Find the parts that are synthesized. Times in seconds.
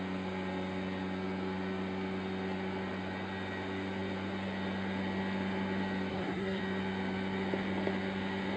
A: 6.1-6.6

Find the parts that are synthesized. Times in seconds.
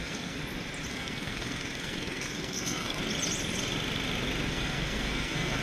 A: 0.0-0.4; 0.9-3.0; 4.5-5.6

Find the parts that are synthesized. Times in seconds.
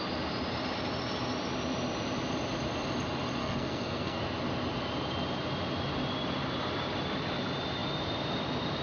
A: 3.4-4.2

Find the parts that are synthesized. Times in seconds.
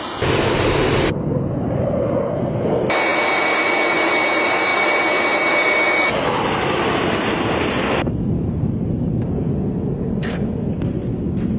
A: none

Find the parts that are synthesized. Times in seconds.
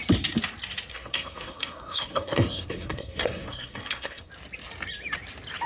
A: 0.9-4.3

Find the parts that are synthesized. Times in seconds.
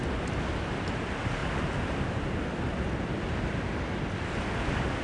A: none